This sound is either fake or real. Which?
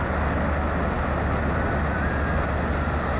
real